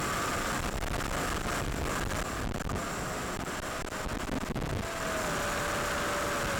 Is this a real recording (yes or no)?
yes